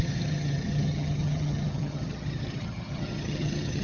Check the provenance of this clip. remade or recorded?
remade